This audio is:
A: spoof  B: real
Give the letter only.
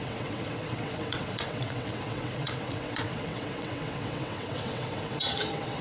A